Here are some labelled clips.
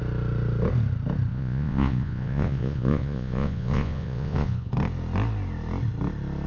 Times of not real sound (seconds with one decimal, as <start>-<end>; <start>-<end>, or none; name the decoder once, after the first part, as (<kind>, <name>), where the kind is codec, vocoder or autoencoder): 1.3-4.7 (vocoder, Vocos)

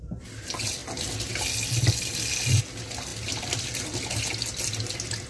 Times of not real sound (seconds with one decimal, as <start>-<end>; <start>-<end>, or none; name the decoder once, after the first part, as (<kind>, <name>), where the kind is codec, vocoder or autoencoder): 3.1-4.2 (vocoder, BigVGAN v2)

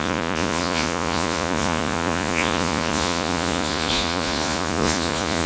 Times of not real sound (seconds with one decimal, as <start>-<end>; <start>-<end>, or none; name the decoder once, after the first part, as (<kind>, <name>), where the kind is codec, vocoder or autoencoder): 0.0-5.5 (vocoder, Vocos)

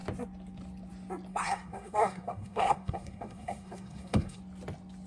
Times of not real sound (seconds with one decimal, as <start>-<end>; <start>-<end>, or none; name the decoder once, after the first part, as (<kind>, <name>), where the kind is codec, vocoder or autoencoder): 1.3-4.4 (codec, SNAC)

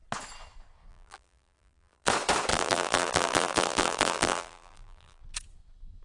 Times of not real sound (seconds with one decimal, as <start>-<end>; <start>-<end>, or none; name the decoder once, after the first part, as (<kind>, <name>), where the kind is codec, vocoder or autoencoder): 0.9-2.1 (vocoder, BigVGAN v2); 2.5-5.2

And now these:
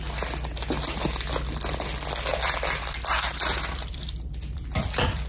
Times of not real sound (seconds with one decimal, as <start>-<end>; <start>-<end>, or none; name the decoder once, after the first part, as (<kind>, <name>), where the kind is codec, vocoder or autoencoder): 2.3-5.3 (vocoder, BigVGAN v2)

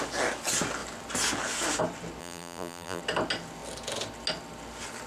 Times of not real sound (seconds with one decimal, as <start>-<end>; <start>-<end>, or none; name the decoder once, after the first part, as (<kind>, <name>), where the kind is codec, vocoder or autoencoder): 2.2-3.0 (vocoder, BigVGAN v2)